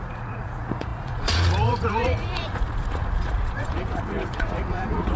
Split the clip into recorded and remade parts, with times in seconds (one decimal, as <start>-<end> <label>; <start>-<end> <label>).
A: 0.0-5.2 remade